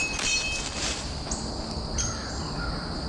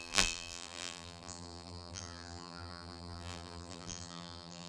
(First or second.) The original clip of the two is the first